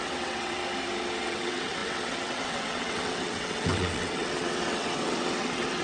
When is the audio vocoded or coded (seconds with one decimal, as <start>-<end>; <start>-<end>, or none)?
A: 0.0-0.6; 1.2-5.8